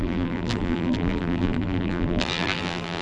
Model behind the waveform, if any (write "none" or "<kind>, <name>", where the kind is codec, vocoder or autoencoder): vocoder, BigVGAN v2